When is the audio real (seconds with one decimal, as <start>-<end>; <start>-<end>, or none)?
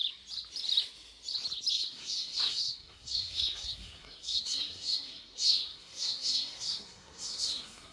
0.0-1.7